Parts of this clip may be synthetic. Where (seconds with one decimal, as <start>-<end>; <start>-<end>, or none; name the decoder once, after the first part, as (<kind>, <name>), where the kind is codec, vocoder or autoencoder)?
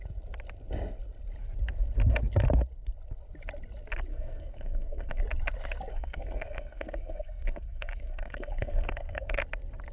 4.1-5.2 (codec, SNAC); 5.9-9.4